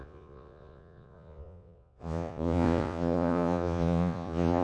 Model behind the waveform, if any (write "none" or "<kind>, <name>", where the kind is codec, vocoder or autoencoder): vocoder, Vocos